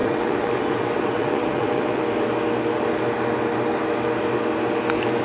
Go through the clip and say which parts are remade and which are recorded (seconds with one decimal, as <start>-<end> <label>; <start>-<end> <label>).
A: 0.0-2.0 remade; 2.0-5.2 recorded